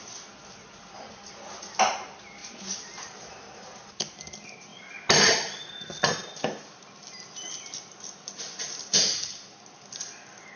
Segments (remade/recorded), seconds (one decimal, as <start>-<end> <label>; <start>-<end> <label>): 0.0-10.6 recorded